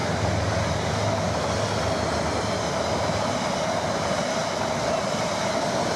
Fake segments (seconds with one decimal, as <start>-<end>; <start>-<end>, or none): none